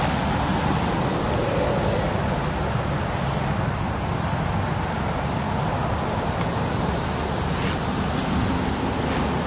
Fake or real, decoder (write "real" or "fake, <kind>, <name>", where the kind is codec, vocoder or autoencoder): real